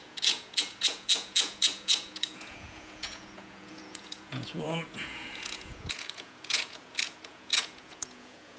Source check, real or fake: fake